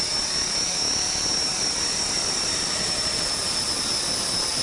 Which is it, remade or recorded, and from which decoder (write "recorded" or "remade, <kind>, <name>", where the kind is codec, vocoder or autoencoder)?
recorded